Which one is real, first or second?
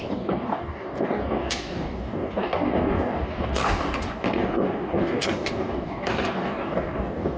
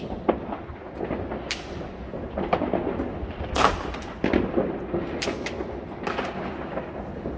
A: second